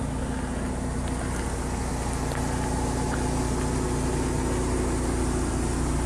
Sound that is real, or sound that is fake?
real